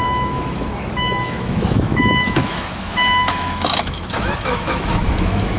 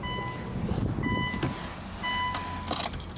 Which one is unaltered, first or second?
second